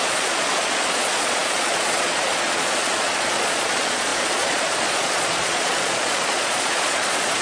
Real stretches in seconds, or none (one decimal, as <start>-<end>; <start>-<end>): none